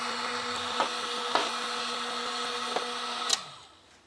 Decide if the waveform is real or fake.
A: real